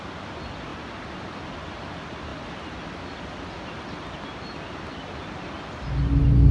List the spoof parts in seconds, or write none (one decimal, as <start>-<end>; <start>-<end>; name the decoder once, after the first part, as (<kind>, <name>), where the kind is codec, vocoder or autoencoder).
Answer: 0.7-1.9 (vocoder, BigVGAN v2)